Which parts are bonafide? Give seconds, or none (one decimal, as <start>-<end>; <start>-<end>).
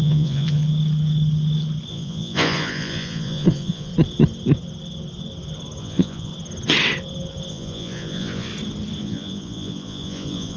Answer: 0.6-1.9; 3.9-5.8; 6.3-7.5; 8.5-9.0